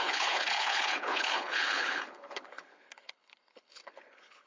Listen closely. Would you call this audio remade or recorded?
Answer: remade